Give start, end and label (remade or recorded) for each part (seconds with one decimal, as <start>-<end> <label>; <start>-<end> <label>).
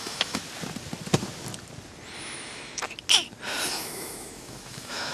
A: 0.0-0.4 remade; 0.4-2.2 recorded; 2.2-2.8 remade; 2.8-3.7 recorded; 3.7-5.1 remade